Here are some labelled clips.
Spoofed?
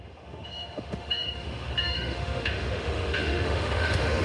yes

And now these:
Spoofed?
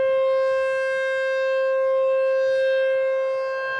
no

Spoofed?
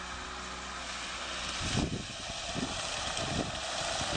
no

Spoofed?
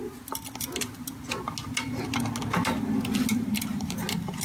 no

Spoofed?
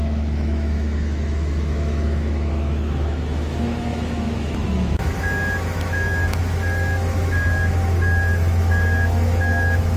yes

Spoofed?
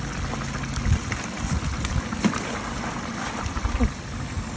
no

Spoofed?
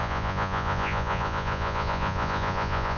yes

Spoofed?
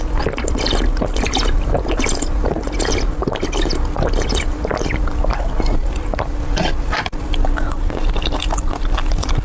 no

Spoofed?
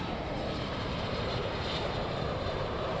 yes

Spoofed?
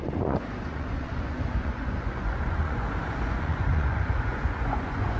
yes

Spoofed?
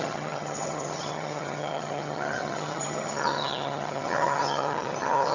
yes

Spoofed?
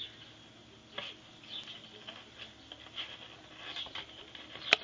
no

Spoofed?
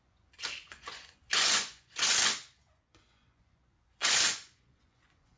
yes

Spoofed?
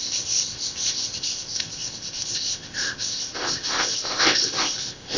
yes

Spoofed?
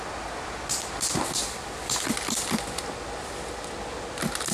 no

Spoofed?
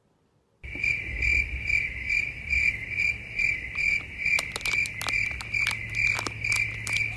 no